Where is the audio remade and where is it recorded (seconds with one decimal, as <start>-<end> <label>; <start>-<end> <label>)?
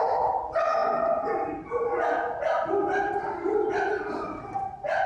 0.0-5.1 recorded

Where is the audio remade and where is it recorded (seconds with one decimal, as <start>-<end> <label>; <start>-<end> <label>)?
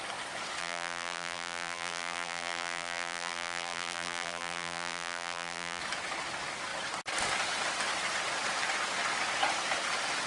0.0-0.6 recorded; 0.6-5.8 remade; 5.8-10.3 recorded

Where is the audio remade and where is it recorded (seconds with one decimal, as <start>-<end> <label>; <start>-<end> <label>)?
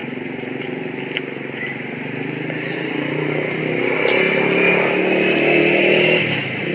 0.0-3.6 remade; 3.6-6.7 recorded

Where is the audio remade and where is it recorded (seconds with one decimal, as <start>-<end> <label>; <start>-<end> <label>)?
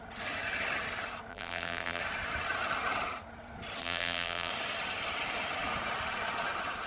0.0-1.3 recorded; 1.3-2.0 remade; 2.0-3.8 recorded; 3.8-4.5 remade; 4.5-6.9 recorded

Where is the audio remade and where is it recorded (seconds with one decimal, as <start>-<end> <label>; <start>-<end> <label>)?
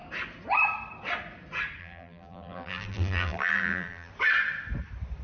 0.0-1.8 recorded; 1.8-4.1 remade; 4.1-5.2 recorded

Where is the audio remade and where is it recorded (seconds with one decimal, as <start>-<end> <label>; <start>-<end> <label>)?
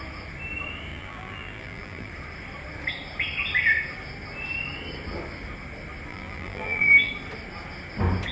0.0-0.9 recorded; 0.9-2.1 remade; 2.1-6.1 recorded; 6.1-7.1 remade; 7.1-8.3 recorded